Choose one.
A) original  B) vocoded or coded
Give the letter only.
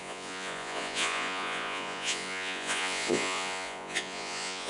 B